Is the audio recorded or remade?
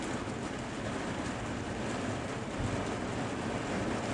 recorded